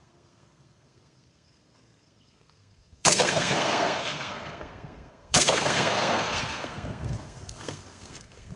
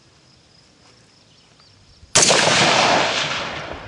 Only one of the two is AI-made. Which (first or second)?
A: first